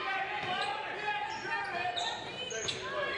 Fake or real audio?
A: real